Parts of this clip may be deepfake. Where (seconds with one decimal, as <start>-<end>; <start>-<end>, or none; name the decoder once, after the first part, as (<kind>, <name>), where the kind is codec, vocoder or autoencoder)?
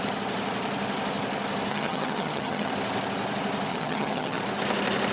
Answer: 1.7-2.7 (vocoder, HiFi-GAN); 3.7-4.4